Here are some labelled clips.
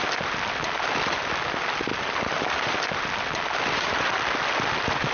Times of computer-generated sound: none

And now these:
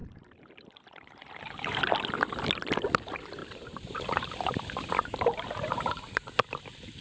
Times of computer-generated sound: 0.0-1.8; 3.4-5.9

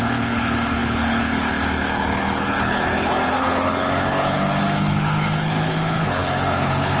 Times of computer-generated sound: 0.0-7.0